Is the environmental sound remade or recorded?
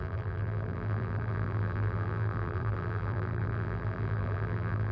remade